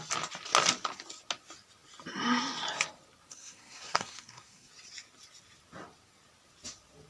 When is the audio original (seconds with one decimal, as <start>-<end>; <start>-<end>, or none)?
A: 0.0-3.3; 4.7-7.1